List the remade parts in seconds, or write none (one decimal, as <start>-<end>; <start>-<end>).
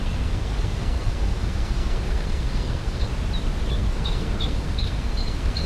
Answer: 0.0-3.1; 3.7-5.7